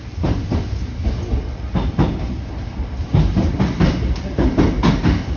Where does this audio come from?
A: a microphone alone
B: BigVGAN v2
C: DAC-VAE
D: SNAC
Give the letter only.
A